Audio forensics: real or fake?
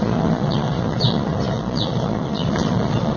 fake